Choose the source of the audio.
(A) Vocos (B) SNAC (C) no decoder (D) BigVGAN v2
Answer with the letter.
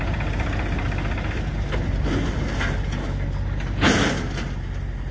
C